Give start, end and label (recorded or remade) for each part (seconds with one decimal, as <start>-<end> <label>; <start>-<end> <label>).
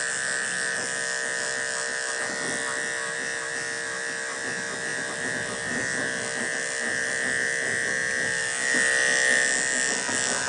0.0-10.5 recorded